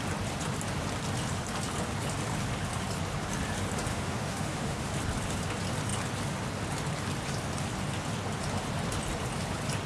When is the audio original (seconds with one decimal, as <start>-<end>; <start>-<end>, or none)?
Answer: 0.0-3.9; 4.9-9.9

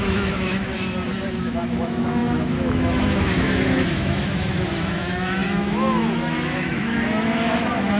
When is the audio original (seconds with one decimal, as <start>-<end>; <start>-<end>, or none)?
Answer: 0.7-1.4

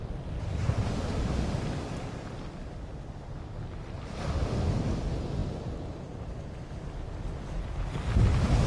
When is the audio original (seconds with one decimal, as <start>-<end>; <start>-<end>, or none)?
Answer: 0.0-8.7

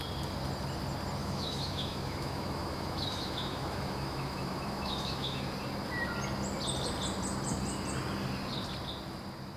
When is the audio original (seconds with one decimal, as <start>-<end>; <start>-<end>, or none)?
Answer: 0.0-1.2; 5.4-9.6